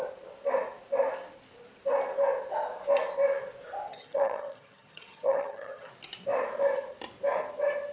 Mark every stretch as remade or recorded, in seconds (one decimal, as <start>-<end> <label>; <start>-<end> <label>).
0.0-3.9 recorded; 3.9-5.9 remade; 5.9-7.9 recorded